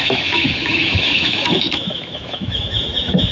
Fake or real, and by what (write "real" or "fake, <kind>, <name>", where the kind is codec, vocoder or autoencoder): fake, autoencoder, DAC-VAE